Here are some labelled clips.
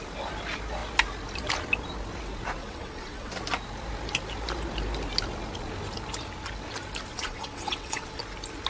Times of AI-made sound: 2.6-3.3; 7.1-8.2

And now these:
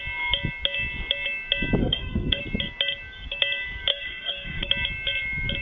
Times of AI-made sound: 1.8-2.4; 3.9-4.7

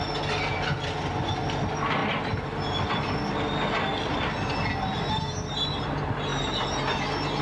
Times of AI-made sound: none

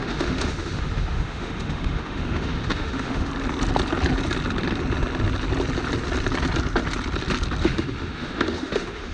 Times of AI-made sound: 0.0-3.3; 7.6-9.1

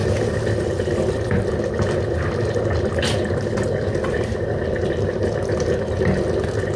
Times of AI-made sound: none

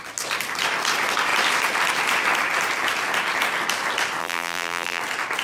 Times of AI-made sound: 4.2-5.0